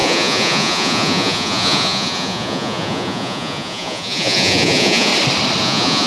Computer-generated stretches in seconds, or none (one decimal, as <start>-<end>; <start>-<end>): 0.0-5.1; 5.6-6.1